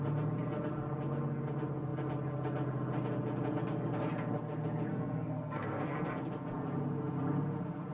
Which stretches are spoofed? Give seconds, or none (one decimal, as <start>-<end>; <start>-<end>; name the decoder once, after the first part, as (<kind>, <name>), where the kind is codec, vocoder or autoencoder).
4.9-6.1 (codec, SNAC)